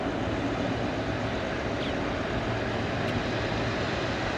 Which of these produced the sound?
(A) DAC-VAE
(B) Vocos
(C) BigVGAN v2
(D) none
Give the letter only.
C